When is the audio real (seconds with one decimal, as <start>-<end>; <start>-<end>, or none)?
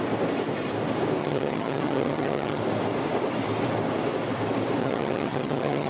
0.0-1.2; 2.6-4.8